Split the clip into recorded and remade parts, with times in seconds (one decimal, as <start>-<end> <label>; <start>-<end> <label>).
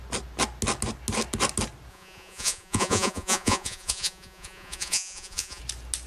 0.0-1.9 recorded; 1.9-5.6 remade; 5.6-6.1 recorded